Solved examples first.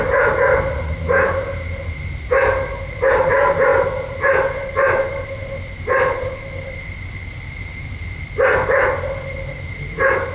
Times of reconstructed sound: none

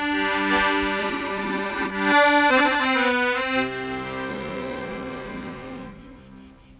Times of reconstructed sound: 1.0-1.9; 4.3-6.2

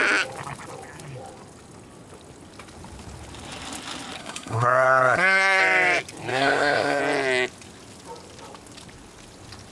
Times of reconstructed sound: 4.2-5.6; 6.3-7.0

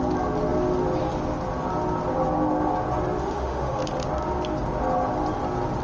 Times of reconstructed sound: 3.2-3.8